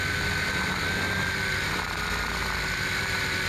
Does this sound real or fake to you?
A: real